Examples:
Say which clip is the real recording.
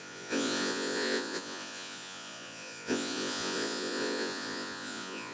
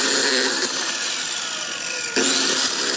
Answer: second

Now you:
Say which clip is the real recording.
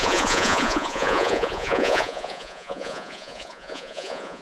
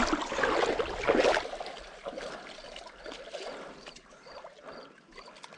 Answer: second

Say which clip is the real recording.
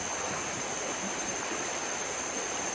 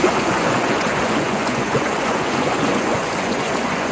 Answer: first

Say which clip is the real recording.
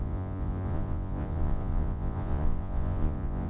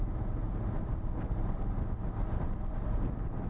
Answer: second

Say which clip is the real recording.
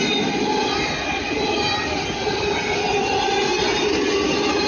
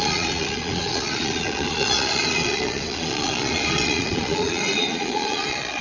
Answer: first